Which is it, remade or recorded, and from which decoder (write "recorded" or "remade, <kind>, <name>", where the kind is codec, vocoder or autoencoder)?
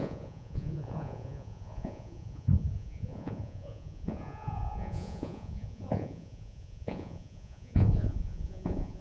remade, vocoder, Vocos